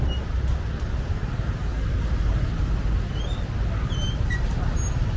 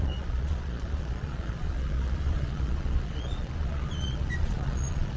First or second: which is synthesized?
second